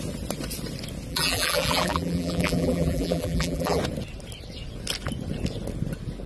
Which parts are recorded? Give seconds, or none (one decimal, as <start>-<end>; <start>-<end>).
0.0-1.1; 3.8-6.3